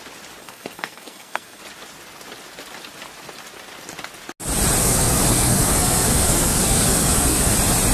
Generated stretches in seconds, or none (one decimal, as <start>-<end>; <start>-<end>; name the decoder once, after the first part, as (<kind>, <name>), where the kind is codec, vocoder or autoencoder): 0.4-1.6 (codec, SNAC); 4.8-7.5